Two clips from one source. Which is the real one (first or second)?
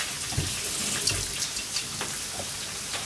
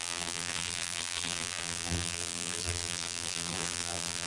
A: first